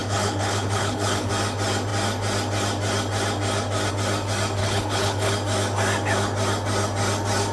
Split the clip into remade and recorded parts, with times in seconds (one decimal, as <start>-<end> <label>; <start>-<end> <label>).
0.0-1.3 remade; 1.3-4.6 recorded; 4.6-5.3 remade; 5.3-7.5 recorded